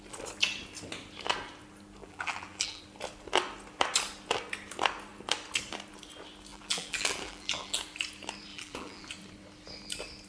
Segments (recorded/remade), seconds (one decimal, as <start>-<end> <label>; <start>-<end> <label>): 0.0-2.0 recorded; 2.0-2.8 remade; 2.8-6.5 recorded; 6.5-7.8 remade; 7.8-8.5 recorded; 8.5-9.1 remade; 9.1-10.3 recorded